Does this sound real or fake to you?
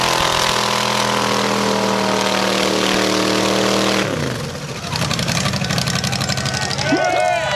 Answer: real